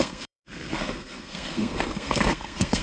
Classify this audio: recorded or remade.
remade